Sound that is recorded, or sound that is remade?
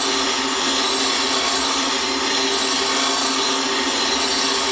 recorded